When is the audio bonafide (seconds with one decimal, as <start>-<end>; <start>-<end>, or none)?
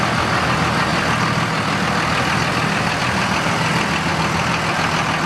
0.0-5.3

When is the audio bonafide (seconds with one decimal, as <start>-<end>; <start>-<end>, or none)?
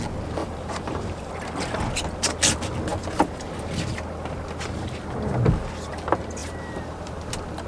0.0-0.4; 1.3-6.4; 7.1-7.7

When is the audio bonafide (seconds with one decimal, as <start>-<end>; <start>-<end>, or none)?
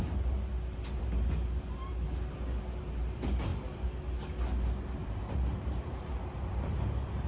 0.5-2.8; 3.5-4.9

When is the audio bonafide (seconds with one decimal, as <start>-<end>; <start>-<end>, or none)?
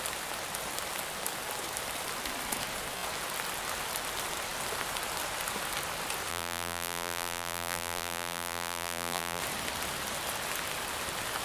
0.0-6.3; 9.4-11.4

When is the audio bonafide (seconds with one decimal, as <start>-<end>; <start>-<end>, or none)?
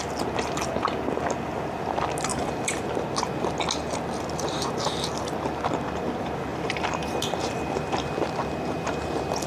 0.0-2.3; 2.9-6.5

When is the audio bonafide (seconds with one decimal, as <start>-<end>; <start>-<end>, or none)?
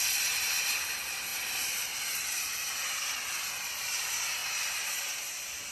0.0-5.7